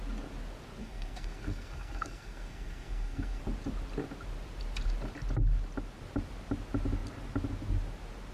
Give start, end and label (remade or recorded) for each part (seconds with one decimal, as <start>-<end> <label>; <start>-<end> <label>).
0.0-0.8 recorded; 0.8-3.4 remade; 3.4-8.3 recorded